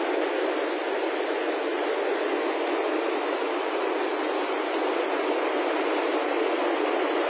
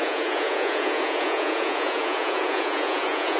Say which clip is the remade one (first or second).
second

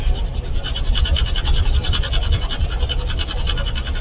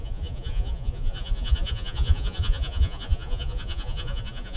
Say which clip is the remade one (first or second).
second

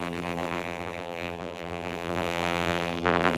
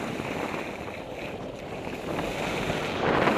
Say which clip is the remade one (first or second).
first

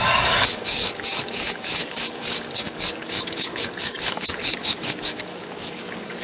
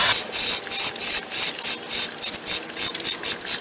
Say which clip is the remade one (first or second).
first